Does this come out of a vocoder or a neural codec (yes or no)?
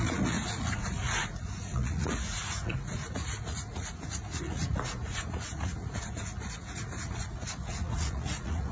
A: yes